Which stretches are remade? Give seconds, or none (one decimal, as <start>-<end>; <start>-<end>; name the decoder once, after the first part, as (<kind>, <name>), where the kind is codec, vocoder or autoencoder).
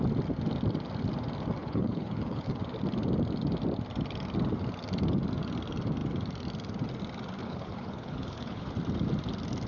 1.6-2.6 (codec, HILCodec); 7.4-8.7